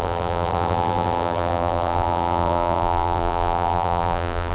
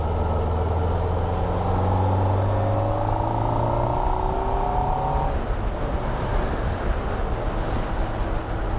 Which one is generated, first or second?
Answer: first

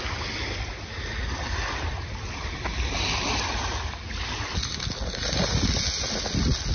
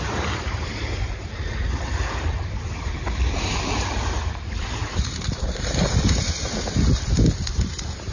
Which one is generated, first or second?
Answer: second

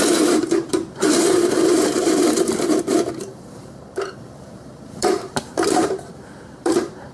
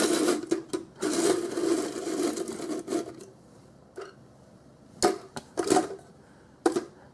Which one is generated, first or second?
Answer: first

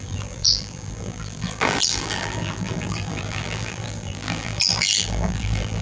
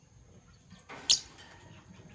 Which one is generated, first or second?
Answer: first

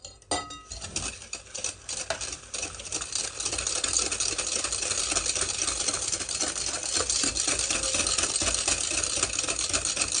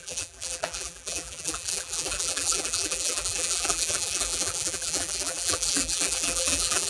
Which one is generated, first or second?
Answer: second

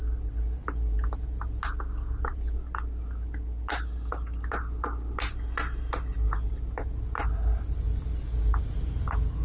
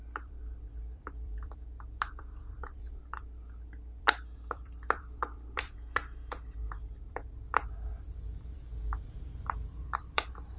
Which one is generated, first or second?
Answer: second